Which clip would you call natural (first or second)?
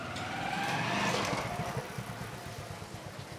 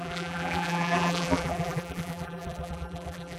first